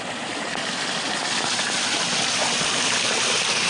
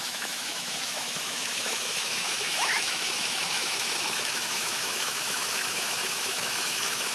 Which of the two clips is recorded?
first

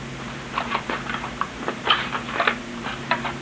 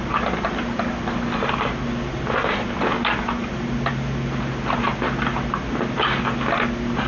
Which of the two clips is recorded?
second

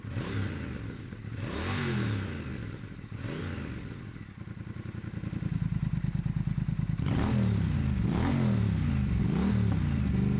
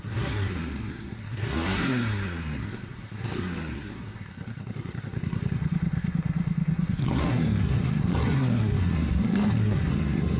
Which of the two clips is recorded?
first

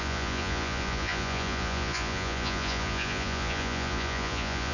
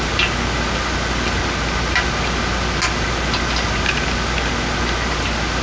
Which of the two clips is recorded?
second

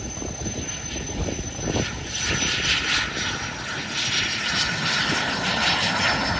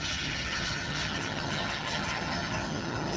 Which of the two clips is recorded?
first